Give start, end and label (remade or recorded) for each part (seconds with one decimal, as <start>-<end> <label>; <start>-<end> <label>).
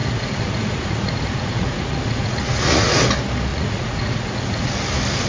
0.0-3.0 remade; 3.0-3.5 recorded; 3.5-4.7 remade; 4.7-5.3 recorded